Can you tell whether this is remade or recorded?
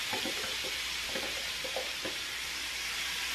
remade